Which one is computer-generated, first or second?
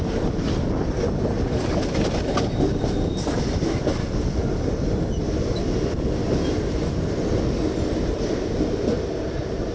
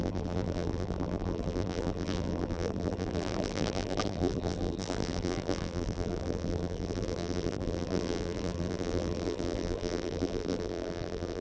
second